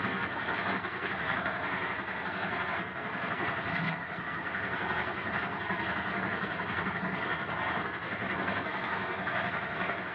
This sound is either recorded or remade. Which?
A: remade